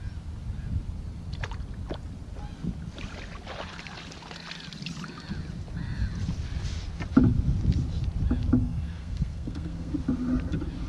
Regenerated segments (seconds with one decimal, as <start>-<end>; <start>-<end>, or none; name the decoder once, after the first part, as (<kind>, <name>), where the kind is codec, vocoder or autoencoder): 8.6-9.9 (codec, SNAC)